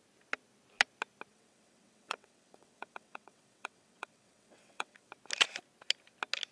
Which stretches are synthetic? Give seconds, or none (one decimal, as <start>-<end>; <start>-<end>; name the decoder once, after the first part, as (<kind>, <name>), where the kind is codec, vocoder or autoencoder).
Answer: 1.3-5.1 (vocoder, WaveNeXt)

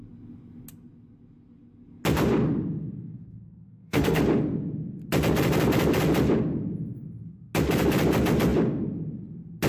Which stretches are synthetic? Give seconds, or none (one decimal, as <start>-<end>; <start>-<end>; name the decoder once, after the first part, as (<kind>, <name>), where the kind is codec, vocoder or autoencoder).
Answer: 3.1-4.2 (codec, SNAC)

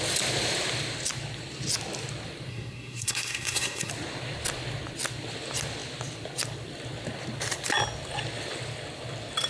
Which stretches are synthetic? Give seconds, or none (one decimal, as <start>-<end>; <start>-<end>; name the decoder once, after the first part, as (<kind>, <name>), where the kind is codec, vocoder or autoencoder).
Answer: 2.5-3.9 (codec, SNAC)

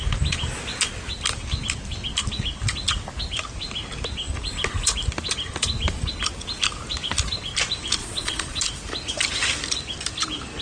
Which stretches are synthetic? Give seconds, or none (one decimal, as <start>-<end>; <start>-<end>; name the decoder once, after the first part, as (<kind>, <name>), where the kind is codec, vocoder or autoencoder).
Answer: 8.0-8.6 (vocoder, Vocos)

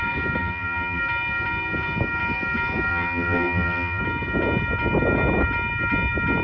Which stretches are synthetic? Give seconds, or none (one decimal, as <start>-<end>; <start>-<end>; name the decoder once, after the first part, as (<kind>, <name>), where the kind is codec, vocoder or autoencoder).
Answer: 0.4-1.0 (vocoder, BigVGAN v2); 2.9-4.0